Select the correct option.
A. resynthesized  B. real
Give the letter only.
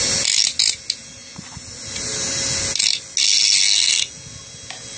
B